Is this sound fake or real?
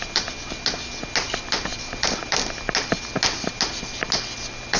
real